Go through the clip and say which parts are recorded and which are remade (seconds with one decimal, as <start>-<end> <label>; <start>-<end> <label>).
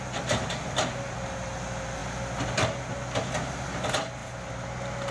0.0-2.0 recorded; 2.0-2.8 remade; 2.8-5.1 recorded